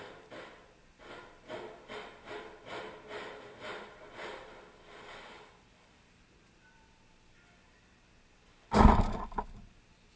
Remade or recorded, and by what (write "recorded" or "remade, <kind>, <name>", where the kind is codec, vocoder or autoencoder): recorded